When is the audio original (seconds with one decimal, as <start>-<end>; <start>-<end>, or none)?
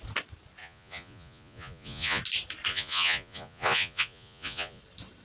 0.0-0.6; 2.2-2.7; 4.8-5.2